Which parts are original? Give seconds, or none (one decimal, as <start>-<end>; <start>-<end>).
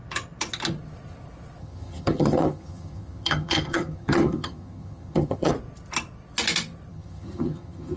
0.0-1.6; 5.5-6.9